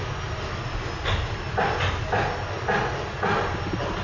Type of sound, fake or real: real